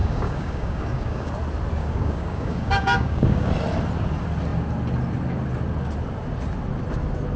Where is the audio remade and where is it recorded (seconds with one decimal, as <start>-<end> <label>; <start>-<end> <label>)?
0.0-1.3 remade; 1.3-1.8 recorded; 1.8-3.5 remade; 3.5-7.4 recorded